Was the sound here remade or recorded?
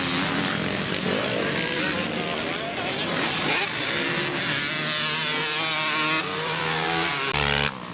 recorded